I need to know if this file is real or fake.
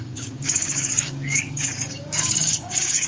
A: fake